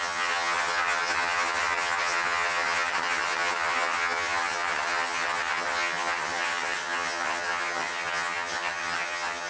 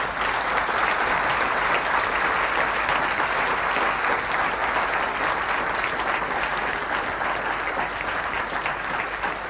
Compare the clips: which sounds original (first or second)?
second